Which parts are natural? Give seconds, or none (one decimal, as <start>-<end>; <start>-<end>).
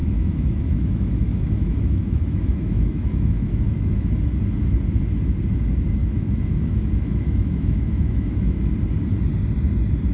4.1-6.0; 8.7-10.1